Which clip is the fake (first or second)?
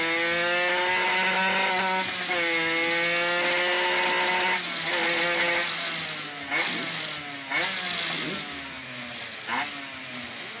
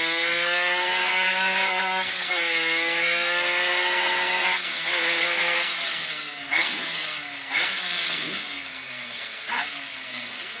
second